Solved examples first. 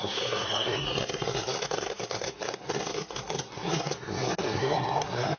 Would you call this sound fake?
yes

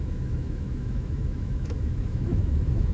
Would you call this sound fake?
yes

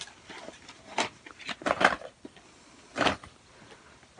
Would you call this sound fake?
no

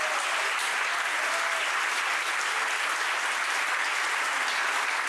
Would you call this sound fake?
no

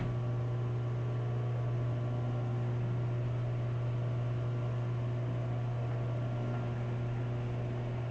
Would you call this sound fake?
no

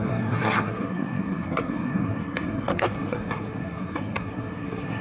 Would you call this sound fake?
yes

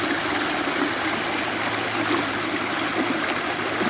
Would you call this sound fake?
no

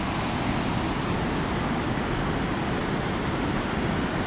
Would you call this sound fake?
no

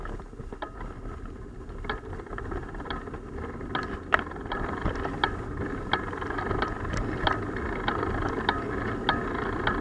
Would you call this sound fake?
no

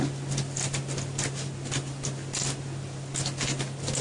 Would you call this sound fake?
no